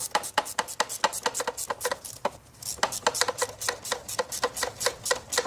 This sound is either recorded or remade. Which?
recorded